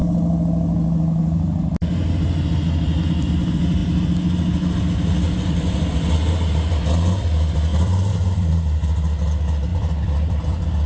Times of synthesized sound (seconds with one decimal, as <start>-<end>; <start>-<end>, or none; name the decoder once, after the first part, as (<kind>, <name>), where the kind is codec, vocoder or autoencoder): 7.7-8.5 (vocoder, BigVGAN v2); 9.7-10.9